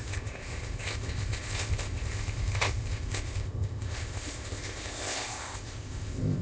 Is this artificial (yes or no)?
yes